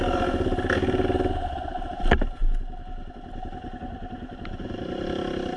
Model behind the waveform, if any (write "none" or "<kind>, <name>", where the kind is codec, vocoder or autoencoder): none